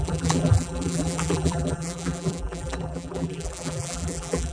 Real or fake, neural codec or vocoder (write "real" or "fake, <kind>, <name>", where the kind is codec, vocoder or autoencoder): fake, vocoder, BigVGAN v2